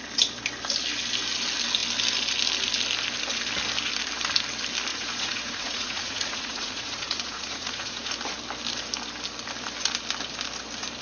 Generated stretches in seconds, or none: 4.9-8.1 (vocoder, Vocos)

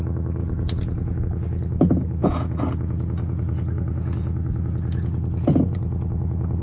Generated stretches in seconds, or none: 0.4-1.2 (vocoder, Vocos); 2.2-6.6

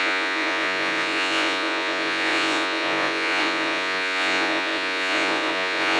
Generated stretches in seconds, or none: 0.0-6.0 (vocoder, Vocos)

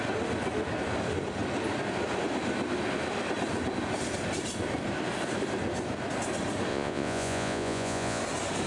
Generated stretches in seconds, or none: 6.7-8.2 (vocoder, Vocos)

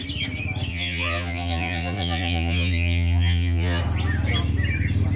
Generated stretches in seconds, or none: 0.7-3.8 (vocoder, Vocos)